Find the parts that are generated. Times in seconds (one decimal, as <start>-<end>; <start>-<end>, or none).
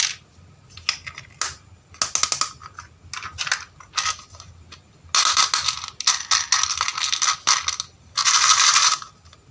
none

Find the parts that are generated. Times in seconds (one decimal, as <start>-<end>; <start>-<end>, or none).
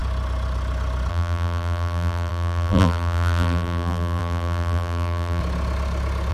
1.1-5.4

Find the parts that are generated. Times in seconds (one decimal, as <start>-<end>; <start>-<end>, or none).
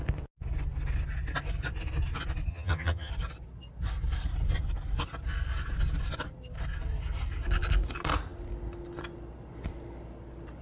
2.5-3.1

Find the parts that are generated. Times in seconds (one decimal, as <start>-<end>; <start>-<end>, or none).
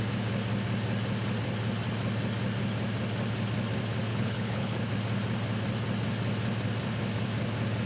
4.1-4.9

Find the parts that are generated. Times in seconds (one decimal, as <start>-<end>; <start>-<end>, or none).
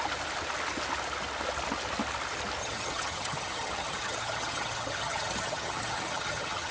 2.6-6.7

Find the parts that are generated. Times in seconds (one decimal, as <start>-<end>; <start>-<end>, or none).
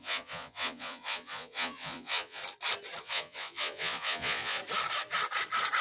0.0-2.4; 3.0-4.6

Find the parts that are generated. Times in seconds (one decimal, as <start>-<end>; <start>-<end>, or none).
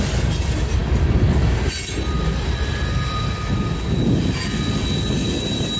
none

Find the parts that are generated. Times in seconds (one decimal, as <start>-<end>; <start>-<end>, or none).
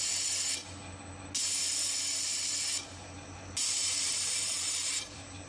0.0-0.6; 3.8-5.5